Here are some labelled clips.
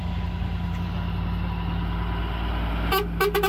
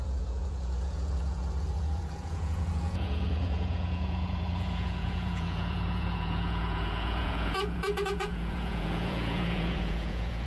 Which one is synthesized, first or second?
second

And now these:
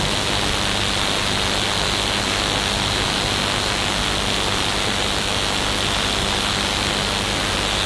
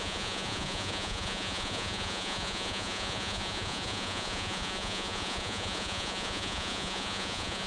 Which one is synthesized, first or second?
second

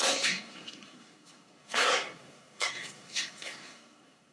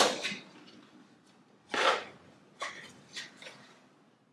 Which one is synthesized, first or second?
first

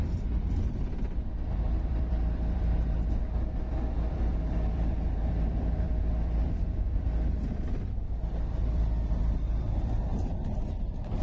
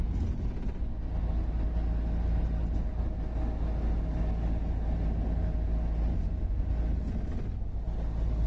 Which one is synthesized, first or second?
first